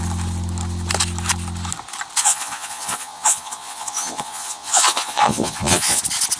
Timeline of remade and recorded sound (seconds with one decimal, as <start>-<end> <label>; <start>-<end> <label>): 0.0-2.2 recorded; 2.2-6.0 remade; 6.0-6.4 recorded